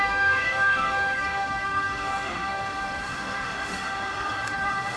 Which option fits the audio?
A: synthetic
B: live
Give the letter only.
A